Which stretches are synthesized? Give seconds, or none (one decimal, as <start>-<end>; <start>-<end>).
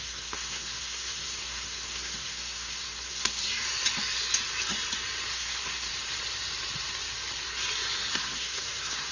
0.0-3.4; 5.3-5.9; 8.1-9.1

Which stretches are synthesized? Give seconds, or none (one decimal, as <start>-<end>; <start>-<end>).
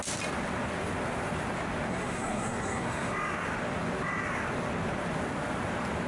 1.9-3.1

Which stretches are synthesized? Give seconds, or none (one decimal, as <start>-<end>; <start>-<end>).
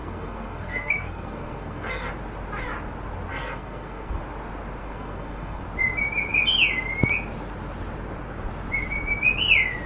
0.0-2.1; 3.3-4.2; 4.8-5.6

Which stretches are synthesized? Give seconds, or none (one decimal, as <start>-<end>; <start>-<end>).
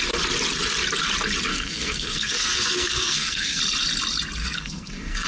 1.5-3.6; 4.4-5.3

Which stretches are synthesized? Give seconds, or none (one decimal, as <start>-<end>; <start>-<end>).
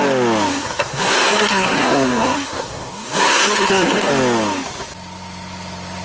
0.5-4.1